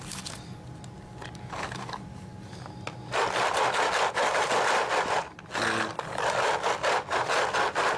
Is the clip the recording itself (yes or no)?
yes